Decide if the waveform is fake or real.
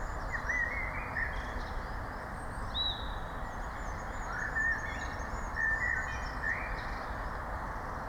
real